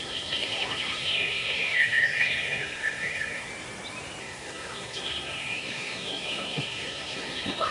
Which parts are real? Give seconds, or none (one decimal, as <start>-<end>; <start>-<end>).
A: 3.5-4.2